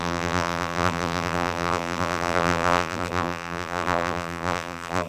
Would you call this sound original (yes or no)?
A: no